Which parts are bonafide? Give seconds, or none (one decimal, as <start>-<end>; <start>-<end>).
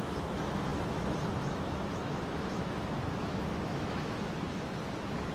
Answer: none